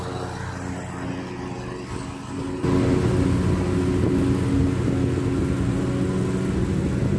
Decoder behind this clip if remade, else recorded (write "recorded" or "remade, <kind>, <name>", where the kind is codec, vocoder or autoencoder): recorded